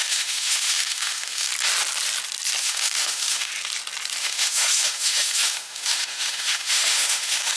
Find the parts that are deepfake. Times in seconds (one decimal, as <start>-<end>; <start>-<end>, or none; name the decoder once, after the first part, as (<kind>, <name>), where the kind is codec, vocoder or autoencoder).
0.0-1.5 (autoencoder, DAC-VAE); 2.6-3.5; 4.2-7.6